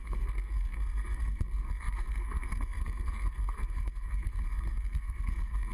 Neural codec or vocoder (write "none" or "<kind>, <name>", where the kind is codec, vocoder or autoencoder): codec, SNAC